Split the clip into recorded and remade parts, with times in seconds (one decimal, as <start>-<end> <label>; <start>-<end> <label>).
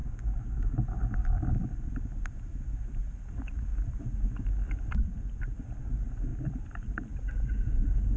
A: 0.0-0.9 remade; 0.9-6.3 recorded; 6.3-7.0 remade; 7.0-8.2 recorded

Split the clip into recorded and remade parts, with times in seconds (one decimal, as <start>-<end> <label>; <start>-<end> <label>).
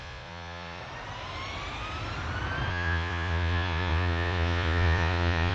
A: 0.0-0.8 remade; 0.8-2.7 recorded; 2.7-5.5 remade